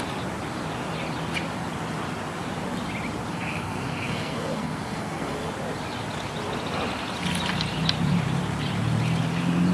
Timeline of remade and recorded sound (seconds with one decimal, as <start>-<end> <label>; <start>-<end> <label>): 0.0-3.3 recorded; 3.3-5.5 remade; 5.5-9.7 recorded